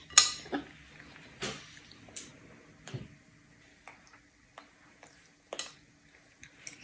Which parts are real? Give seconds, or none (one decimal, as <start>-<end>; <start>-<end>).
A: 0.0-6.8